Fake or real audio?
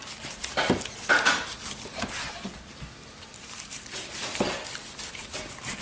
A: real